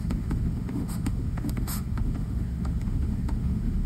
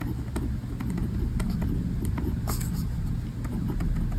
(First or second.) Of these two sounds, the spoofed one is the first